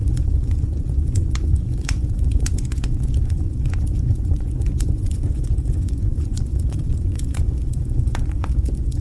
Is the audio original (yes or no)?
no